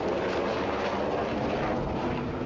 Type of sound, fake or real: real